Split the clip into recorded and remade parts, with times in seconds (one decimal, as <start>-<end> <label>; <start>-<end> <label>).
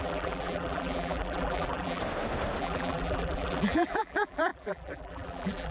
0.0-2.0 remade; 2.0-2.6 recorded; 2.6-5.7 remade